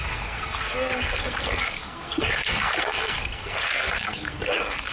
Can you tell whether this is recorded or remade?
remade